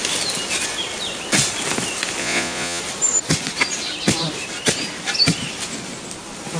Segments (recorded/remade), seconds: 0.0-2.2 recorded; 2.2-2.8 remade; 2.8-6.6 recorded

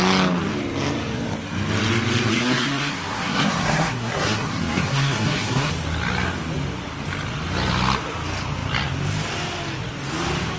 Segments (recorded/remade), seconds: 0.0-2.3 recorded; 2.3-5.7 remade; 5.7-10.6 recorded

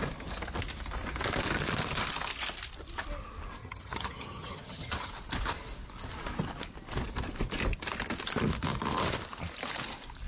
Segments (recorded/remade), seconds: 0.0-3.6 recorded; 3.6-5.1 remade; 5.1-10.3 recorded

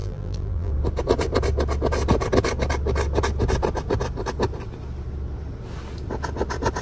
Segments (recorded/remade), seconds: 0.0-0.7 remade; 0.7-6.8 recorded

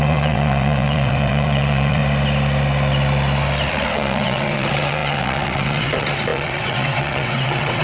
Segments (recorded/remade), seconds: 0.0-2.0 remade; 2.0-3.7 recorded; 3.7-7.8 remade

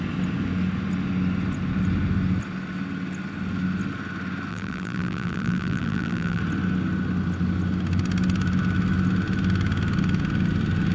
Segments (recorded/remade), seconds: 0.0-4.5 recorded; 4.5-6.4 remade; 6.4-10.9 recorded

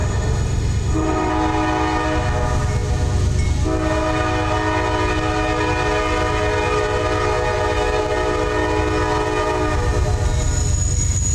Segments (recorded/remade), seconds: 0.0-1.3 remade; 1.3-11.3 recorded

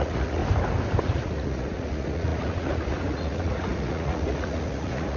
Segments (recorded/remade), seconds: 0.0-0.4 remade; 0.4-1.0 recorded; 1.0-5.2 remade